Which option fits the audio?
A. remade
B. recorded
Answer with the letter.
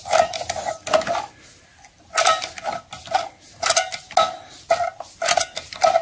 B